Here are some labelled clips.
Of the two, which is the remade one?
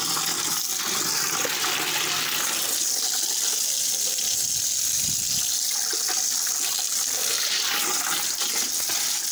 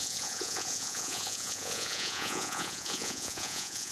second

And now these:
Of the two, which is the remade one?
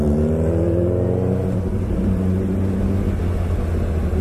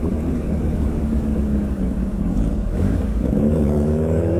second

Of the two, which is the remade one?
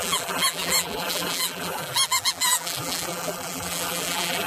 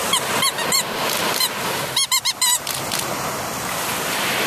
first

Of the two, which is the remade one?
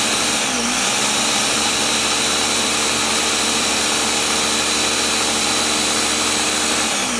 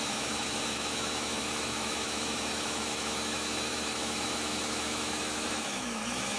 second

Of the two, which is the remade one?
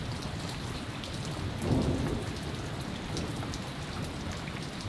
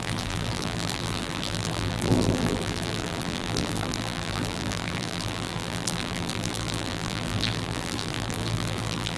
second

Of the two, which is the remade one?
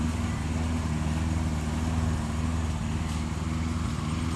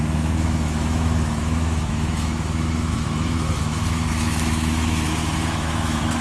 second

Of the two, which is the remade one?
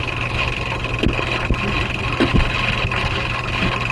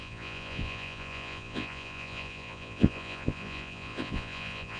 second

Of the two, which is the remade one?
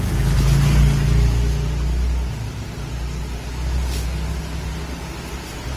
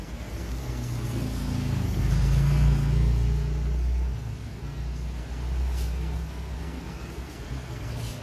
second